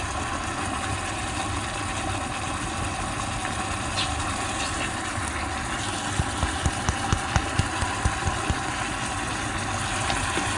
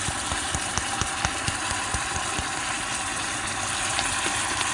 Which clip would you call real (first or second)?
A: first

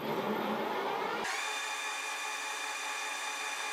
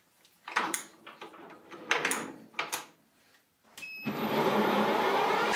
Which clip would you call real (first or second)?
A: first